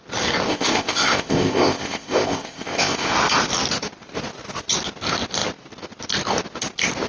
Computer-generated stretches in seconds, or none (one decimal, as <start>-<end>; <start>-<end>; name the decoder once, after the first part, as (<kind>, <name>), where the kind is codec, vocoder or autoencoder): 0.5-3.1 (codec, ZipCodec)